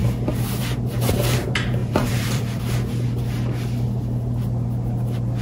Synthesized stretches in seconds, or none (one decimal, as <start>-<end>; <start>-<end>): 1.8-2.6